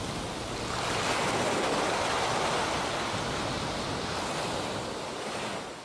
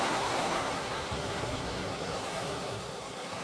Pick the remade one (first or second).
second